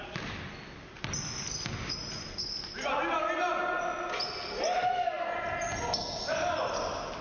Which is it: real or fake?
real